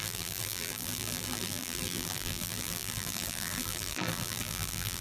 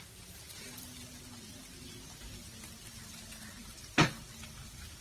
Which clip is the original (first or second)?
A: second